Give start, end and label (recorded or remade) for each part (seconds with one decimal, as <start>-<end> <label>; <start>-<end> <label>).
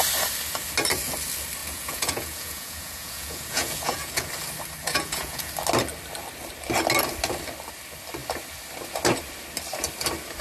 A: 0.0-1.6 recorded; 1.6-4.3 remade; 4.3-4.8 recorded; 4.8-5.5 remade; 5.5-10.4 recorded